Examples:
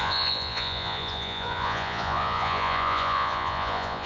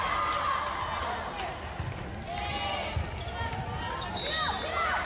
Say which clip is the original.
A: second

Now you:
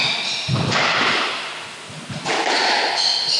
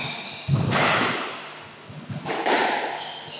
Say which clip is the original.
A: second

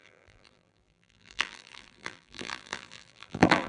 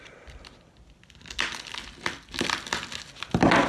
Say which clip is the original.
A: second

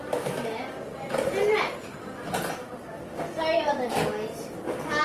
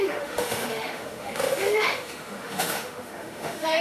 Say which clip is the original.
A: first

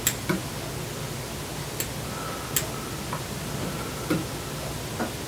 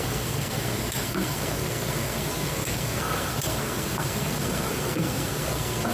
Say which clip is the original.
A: first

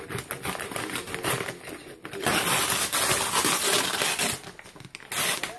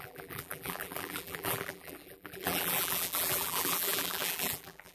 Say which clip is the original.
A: first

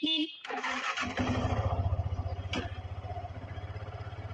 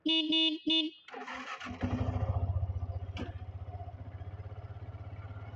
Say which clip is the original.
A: second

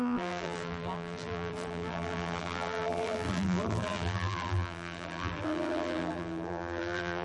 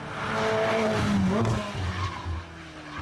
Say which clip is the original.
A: second